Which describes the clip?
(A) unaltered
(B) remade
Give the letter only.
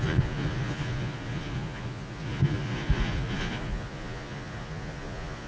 B